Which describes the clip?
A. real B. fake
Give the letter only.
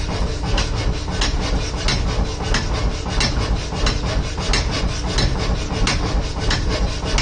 A